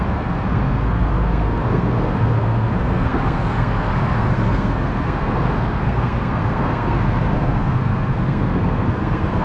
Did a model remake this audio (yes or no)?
yes